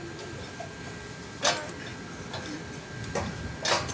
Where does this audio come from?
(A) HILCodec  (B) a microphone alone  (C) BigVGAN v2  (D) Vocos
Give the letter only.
B